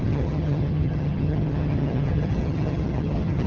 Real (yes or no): no